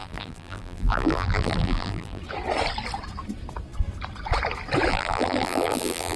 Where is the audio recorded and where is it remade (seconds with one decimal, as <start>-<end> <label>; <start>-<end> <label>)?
0.0-2.2 remade; 2.2-4.9 recorded; 4.9-6.2 remade